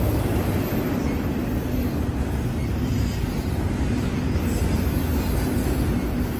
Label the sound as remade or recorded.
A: recorded